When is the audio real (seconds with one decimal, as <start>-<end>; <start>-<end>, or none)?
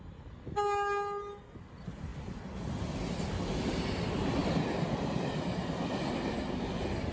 0.0-7.1